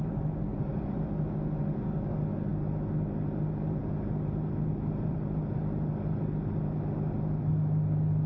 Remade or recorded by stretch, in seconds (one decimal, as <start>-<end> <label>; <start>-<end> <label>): 0.0-0.5 recorded; 0.5-1.1 remade; 1.1-2.5 recorded; 2.5-7.5 remade; 7.5-8.3 recorded